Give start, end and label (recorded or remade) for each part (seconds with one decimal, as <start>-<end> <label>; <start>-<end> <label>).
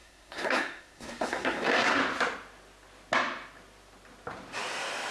0.0-2.0 remade; 2.0-5.1 recorded